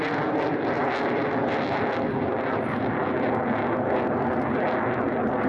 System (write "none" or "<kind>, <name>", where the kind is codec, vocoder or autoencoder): none